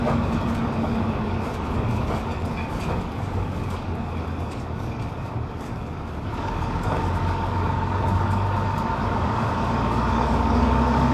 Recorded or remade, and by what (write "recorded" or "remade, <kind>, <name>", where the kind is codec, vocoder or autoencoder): remade, codec, DAC